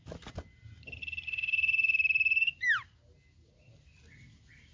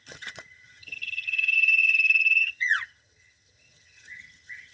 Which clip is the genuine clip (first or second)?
first